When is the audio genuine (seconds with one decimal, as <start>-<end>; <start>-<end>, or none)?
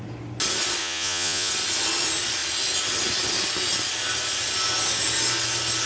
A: 0.0-0.8; 1.5-5.9